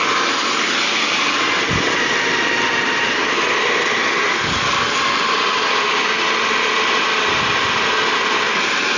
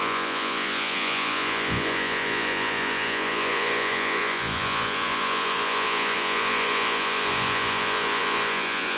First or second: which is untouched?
first